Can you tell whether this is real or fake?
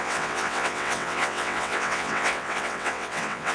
fake